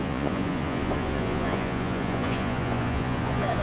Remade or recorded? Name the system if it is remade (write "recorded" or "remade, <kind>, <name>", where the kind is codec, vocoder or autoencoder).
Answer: remade, vocoder, Vocos